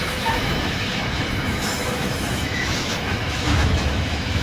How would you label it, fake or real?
fake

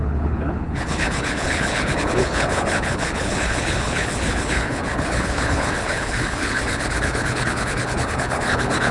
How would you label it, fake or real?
fake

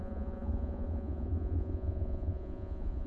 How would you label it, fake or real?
fake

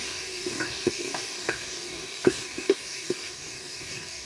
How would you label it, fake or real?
fake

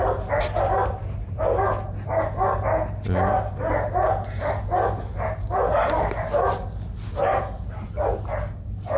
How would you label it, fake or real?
real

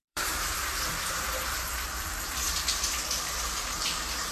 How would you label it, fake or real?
fake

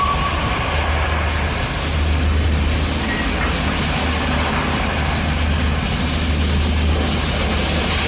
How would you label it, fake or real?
real